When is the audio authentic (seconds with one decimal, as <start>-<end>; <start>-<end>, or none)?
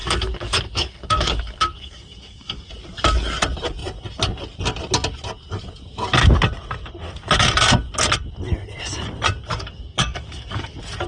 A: 2.7-9.5; 10.7-11.1